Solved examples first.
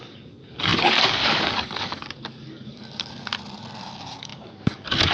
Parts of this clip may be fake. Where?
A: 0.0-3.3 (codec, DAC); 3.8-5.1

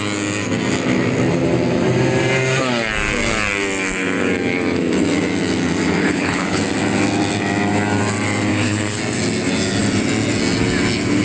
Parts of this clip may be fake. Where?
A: 6.0-6.6 (codec, HILCodec); 8.5-9.0

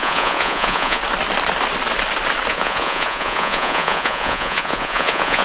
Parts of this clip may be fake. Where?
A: 0.0-1.0 (vocoder, Vocos); 2.5-5.4

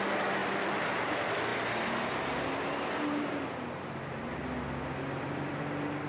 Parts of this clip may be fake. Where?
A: 0.4-1.1 (vocoder, BigVGAN v2)

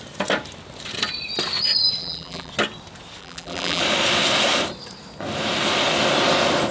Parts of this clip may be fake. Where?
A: 2.0-2.5 (vocoder, BigVGAN v2); 3.2-3.8